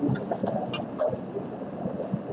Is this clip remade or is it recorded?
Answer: recorded